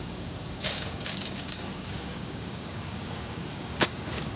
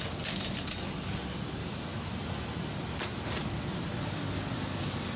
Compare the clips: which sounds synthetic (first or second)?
first